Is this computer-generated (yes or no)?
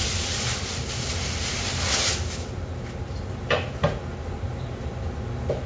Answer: no